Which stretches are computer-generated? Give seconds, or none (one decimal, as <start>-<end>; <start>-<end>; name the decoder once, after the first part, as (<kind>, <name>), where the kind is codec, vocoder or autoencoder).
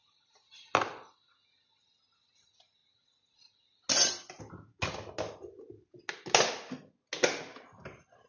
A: none